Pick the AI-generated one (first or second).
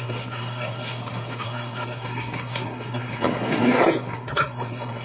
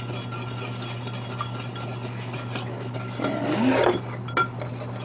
first